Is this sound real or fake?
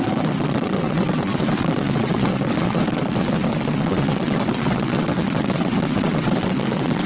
fake